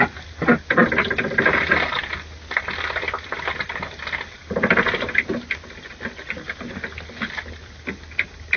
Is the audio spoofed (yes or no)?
no